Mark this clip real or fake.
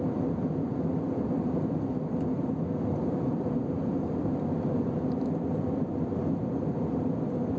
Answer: fake